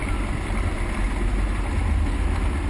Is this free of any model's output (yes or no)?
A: yes